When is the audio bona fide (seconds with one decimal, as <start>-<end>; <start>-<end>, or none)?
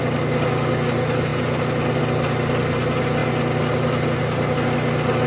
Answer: 0.0-5.3